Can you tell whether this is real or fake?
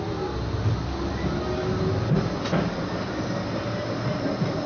real